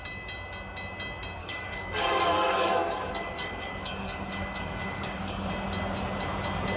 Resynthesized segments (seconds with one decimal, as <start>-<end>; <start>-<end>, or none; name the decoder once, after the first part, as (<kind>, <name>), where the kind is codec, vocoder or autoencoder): 1.4-5.5 (codec, DAC)